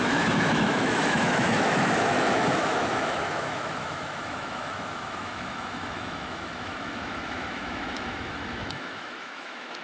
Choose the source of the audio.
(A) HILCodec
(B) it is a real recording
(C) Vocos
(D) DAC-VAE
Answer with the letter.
D